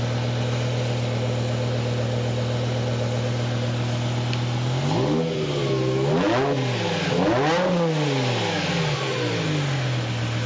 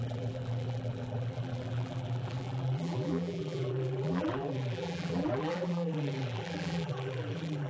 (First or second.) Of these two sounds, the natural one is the first